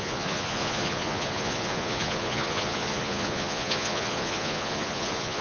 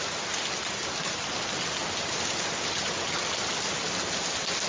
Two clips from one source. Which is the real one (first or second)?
second